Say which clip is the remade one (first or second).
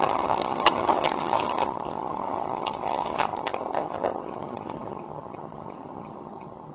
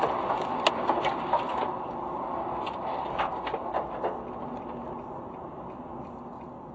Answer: first